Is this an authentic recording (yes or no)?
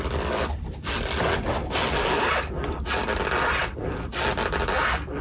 yes